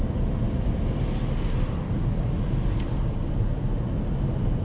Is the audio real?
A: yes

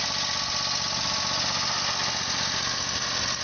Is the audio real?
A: yes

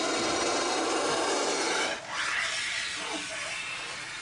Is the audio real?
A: no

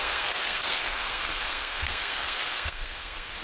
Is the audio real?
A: no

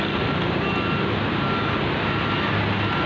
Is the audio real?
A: yes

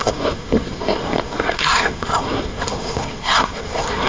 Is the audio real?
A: no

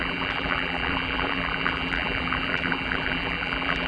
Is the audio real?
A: no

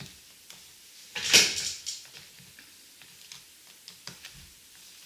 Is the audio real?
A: yes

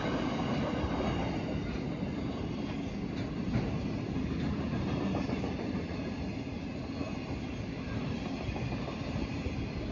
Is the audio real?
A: yes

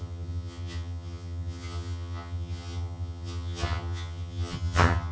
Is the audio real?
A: no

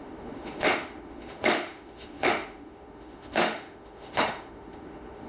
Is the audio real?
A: no